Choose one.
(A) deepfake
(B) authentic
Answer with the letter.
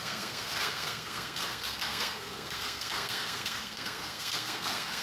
A